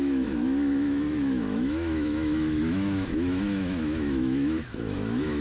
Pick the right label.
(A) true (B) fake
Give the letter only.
B